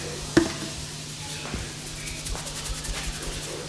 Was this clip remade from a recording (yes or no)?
no